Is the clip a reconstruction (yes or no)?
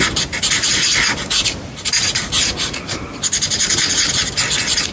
no